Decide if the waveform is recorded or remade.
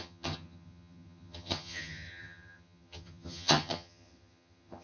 remade